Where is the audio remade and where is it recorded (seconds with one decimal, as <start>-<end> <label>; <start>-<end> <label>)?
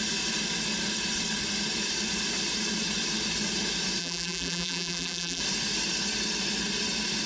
0.0-4.0 recorded; 4.0-5.4 remade; 5.4-7.3 recorded